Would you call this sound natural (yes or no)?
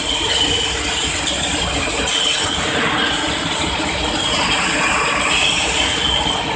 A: yes